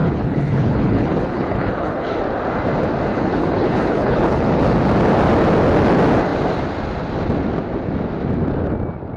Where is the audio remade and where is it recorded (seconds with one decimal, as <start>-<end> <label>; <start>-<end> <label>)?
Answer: 0.0-2.2 remade; 2.2-3.1 recorded; 3.1-4.6 remade; 4.6-9.2 recorded